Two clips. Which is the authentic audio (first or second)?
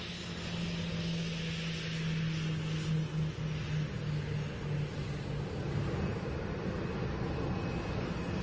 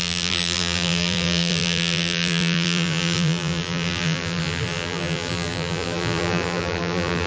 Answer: first